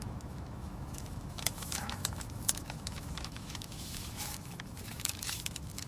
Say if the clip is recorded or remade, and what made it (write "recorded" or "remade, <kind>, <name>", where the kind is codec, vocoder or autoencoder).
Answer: remade, autoencoder, DAC-VAE